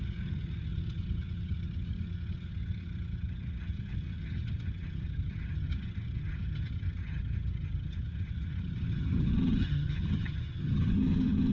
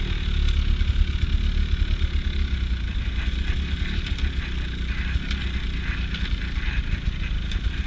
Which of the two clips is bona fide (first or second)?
second